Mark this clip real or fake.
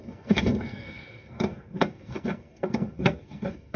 fake